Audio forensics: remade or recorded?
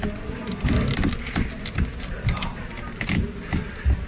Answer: recorded